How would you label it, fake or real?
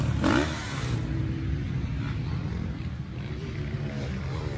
real